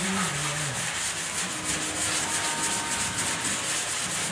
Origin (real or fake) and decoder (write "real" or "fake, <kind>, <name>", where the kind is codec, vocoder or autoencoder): real